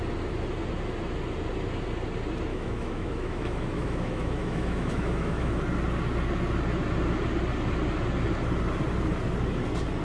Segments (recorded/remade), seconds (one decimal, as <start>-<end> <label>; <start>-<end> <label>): 0.0-2.5 recorded; 2.5-5.6 remade; 5.6-10.0 recorded

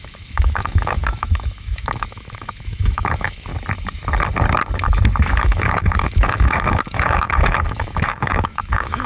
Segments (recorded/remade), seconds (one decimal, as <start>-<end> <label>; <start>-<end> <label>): 0.0-3.5 remade; 3.5-5.4 recorded; 5.4-9.1 remade

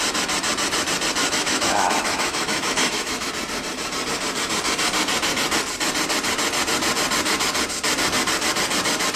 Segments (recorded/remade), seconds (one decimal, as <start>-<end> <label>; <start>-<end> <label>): 0.0-1.2 recorded; 1.2-3.3 remade; 3.3-9.2 recorded

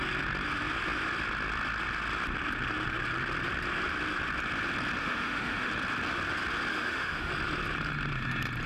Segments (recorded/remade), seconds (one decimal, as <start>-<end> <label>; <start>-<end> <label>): 0.0-5.0 recorded; 5.0-5.7 remade; 5.7-6.7 recorded; 6.7-7.3 remade; 7.3-8.7 recorded

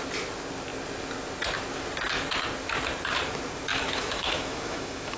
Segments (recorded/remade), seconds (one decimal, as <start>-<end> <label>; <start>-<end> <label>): 0.0-3.7 recorded; 3.7-5.2 remade